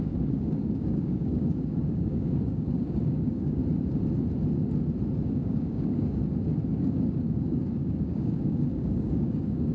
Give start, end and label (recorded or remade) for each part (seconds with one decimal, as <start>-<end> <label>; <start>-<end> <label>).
0.0-3.6 remade; 3.6-5.3 recorded; 5.3-6.2 remade; 6.2-6.8 recorded; 6.8-9.7 remade